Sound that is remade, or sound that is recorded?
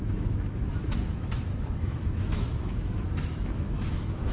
remade